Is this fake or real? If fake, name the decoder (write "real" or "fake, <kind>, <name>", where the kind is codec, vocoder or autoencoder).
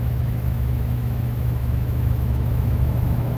fake, autoencoder, DAC-VAE